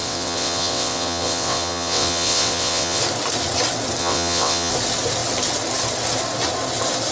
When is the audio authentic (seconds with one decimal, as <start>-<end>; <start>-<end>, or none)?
3.0-4.0; 4.7-7.1